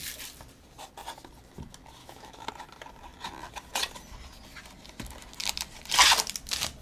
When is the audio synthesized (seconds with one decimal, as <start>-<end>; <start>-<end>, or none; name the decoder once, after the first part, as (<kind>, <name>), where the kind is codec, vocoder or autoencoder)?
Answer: 2.0-2.5 (autoencoder, DAC-VAE)